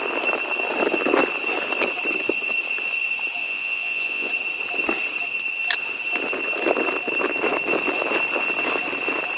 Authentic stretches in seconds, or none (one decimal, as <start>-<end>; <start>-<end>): 0.0-3.4; 4.3-9.4